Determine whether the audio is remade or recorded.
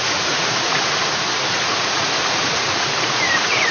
remade